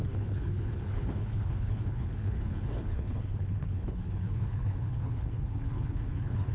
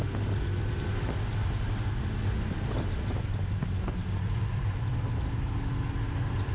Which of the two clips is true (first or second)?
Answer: second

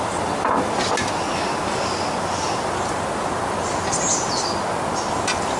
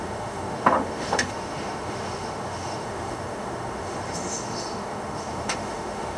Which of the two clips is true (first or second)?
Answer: first